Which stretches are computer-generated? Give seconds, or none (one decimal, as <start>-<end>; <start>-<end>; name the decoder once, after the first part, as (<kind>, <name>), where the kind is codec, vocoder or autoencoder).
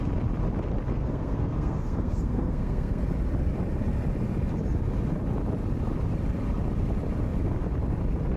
0.9-3.0 (codec, SNAC)